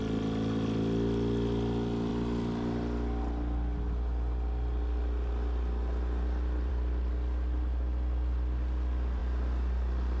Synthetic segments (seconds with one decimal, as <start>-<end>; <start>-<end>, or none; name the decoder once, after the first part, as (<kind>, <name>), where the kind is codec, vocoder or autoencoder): none